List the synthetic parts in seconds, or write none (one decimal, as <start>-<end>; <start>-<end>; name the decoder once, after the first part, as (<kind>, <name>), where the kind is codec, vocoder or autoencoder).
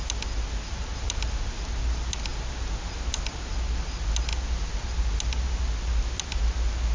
none